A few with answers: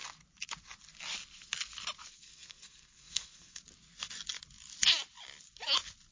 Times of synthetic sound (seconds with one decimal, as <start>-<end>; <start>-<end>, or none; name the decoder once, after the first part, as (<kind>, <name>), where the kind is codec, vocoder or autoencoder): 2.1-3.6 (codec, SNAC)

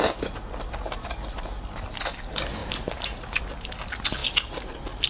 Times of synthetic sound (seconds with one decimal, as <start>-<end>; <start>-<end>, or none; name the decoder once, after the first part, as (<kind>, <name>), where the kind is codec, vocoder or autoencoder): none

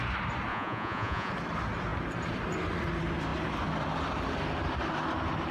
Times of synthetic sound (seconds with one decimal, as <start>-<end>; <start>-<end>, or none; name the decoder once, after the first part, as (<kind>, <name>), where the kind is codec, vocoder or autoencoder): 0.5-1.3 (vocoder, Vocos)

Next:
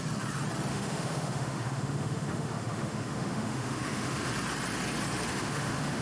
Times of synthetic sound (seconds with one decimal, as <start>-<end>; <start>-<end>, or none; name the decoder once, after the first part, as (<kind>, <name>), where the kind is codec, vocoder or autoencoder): 0.7-4.3 (autoencoder, DAC-VAE); 5.3-6.0

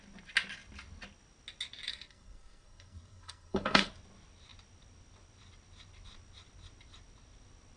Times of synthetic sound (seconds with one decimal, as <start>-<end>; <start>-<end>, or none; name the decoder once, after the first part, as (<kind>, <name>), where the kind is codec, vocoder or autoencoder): 1.9-3.9 (codec, SNAC)

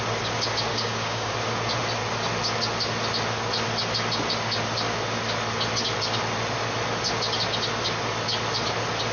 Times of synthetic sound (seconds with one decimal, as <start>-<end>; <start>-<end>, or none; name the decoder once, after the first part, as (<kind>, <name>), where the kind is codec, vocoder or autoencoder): 0.7-1.3 (codec, DAC)

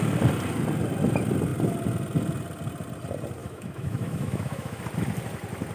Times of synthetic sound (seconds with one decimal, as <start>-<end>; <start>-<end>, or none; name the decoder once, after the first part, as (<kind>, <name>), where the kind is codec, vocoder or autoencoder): 3.4-4.8 (autoencoder, DAC-VAE)